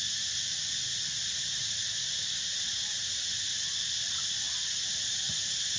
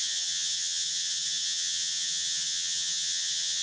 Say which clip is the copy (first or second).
second